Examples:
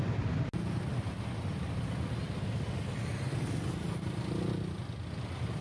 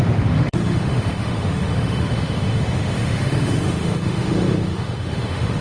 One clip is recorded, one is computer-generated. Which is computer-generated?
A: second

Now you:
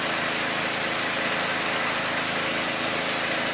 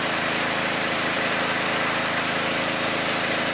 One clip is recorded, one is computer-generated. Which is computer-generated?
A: second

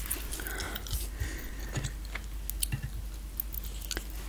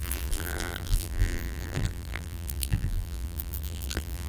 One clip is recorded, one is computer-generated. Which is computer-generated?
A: second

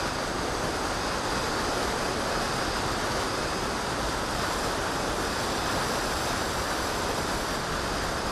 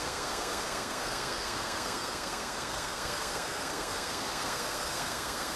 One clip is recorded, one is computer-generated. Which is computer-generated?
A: second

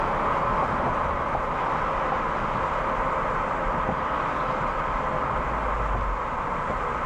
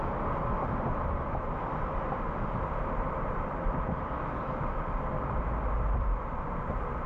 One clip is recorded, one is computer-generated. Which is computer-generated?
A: second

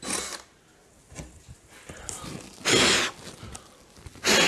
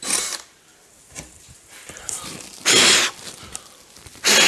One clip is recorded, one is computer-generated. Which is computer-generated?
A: second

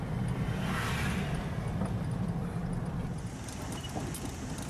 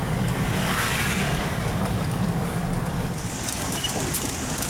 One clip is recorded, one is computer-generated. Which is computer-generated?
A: second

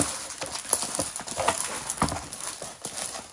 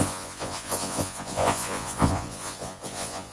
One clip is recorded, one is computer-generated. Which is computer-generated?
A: second